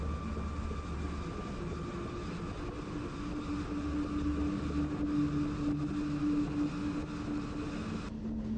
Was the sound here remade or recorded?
recorded